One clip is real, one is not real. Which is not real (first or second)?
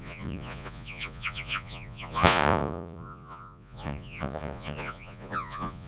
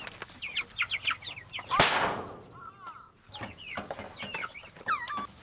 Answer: first